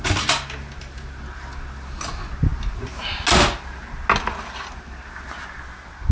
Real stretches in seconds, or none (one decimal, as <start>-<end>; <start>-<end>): 0.0-6.1